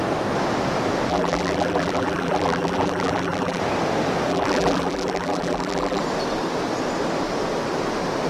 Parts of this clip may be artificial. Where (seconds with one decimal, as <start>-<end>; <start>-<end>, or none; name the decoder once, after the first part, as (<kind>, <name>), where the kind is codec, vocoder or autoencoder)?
1.1-3.6 (vocoder, BigVGAN v2); 4.3-6.0

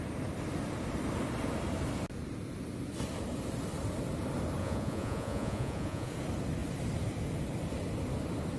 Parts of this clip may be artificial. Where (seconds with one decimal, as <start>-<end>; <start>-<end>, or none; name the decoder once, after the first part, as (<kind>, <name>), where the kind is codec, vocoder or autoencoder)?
4.6-6.1 (vocoder, Vocos)

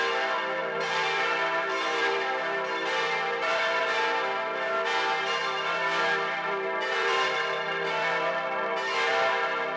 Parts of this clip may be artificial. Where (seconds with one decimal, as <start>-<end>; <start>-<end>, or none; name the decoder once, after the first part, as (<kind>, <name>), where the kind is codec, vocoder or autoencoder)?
0.6-3.8 (vocoder, BigVGAN v2); 5.4-9.1